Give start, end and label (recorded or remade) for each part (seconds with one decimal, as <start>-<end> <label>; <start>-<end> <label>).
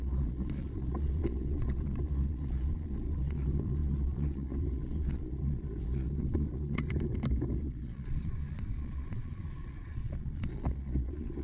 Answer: 0.0-7.1 remade; 7.1-7.6 recorded; 7.6-11.4 remade